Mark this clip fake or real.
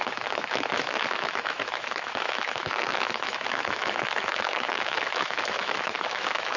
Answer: fake